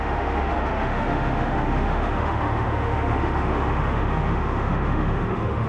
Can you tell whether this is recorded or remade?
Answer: remade